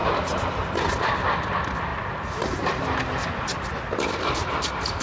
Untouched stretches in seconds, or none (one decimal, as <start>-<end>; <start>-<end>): 0.0-5.0